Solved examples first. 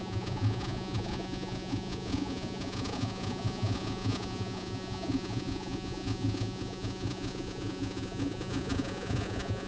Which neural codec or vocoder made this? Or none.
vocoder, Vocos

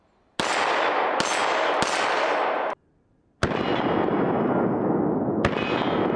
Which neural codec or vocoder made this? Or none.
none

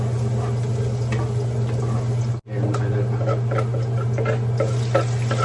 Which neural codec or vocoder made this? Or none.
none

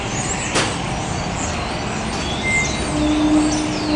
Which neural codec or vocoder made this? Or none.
none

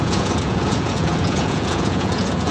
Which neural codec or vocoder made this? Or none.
vocoder, Vocos